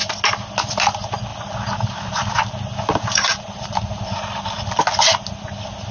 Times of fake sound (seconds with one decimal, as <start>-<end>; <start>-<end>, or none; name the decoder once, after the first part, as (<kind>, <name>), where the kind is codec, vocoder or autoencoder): 1.3-4.8 (vocoder, BigVGAN v2)